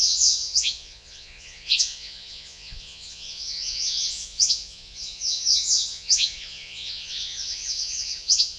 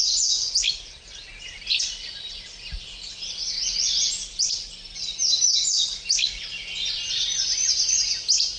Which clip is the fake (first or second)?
first